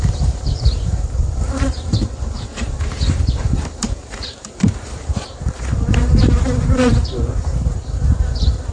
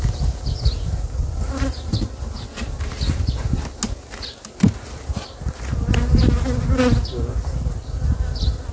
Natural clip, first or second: second